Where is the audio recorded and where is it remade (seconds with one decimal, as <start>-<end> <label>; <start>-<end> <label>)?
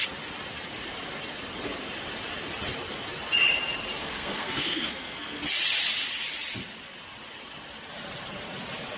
0.0-4.0 recorded; 4.0-5.4 remade; 5.4-9.0 recorded